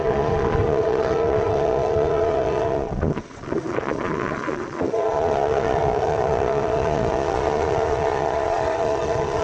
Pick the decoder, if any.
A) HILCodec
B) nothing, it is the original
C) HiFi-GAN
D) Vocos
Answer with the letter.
D